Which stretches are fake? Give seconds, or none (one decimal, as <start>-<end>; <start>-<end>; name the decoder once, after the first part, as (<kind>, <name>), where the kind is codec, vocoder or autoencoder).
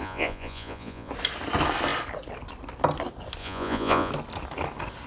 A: 0.0-1.1 (vocoder, Vocos); 3.4-4.1